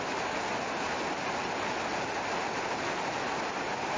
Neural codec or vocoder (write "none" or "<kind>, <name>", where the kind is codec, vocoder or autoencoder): none